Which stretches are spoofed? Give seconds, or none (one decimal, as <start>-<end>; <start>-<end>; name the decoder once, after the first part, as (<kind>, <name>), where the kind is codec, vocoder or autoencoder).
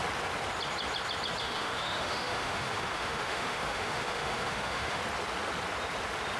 1.4-5.0 (autoencoder, DAC-VAE)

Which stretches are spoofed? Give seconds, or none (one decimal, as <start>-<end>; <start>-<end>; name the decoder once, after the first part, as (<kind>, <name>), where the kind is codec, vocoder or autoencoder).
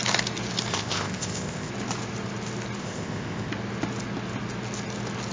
0.7-1.7 (codec, ZipCodec); 2.8-3.5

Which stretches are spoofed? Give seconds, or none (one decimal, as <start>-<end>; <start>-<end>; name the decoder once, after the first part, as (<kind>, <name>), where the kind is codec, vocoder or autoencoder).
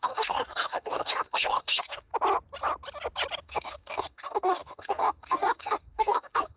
0.0-2.1 (codec, DAC); 3.4-6.6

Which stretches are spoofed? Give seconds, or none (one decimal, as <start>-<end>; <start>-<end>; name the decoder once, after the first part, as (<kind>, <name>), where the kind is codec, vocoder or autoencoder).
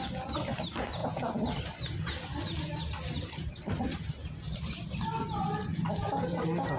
1.0-4.9 (vocoder, BigVGAN v2)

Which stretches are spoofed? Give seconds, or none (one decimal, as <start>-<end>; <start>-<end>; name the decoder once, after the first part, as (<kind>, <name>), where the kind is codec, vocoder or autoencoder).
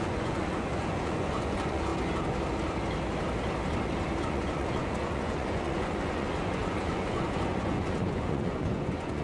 0.0-1.9 (vocoder, Vocos); 4.2-9.2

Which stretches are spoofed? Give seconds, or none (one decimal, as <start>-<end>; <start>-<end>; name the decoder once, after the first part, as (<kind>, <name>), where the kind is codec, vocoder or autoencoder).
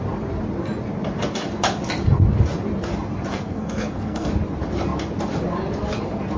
3.3-4.3 (codec, SNAC)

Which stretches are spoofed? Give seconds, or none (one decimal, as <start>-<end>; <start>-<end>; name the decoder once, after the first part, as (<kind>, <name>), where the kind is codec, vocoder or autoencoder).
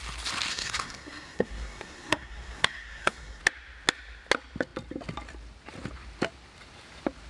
0.5-3.4 (codec, SNAC)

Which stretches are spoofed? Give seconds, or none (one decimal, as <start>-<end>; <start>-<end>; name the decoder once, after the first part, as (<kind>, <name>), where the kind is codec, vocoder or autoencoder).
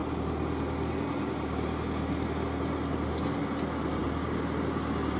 none